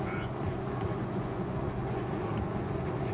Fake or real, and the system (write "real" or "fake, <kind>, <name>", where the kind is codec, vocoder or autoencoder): fake, vocoder, Vocos